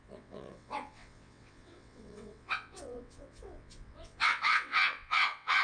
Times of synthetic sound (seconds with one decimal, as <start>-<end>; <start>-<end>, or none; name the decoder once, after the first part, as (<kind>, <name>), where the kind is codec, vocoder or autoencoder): 0.0-5.6 (vocoder, WaveNeXt)